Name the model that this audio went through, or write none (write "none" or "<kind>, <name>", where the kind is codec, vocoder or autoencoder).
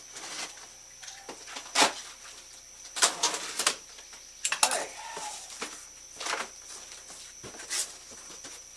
none